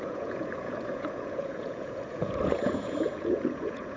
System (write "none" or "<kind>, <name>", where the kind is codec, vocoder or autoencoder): vocoder, Vocos